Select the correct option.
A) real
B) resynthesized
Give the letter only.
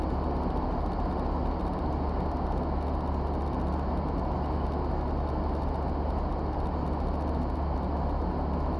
A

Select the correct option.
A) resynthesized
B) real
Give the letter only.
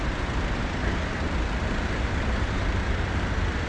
B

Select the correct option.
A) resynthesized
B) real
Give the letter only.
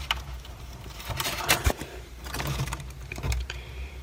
A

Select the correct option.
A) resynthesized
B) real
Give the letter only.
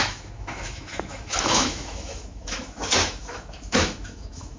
A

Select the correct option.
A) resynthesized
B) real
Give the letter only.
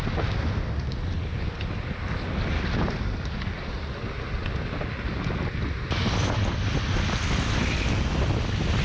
B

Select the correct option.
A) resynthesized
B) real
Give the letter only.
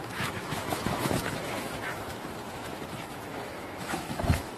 A